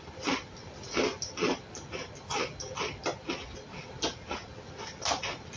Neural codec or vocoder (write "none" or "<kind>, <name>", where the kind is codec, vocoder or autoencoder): none